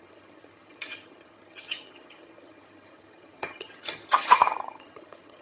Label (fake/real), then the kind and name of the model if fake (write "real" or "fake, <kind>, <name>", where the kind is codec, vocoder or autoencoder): fake, vocoder, HiFi-GAN